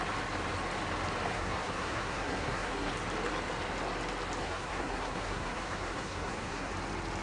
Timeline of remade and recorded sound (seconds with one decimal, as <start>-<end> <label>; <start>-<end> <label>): 0.0-1.3 recorded; 1.3-2.9 remade; 2.9-4.4 recorded; 4.4-6.7 remade; 6.7-7.2 recorded